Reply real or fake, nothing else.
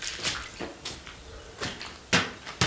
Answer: real